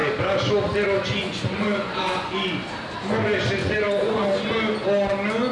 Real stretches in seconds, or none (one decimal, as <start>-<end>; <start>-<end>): 0.0-1.2; 2.3-3.6; 4.2-5.5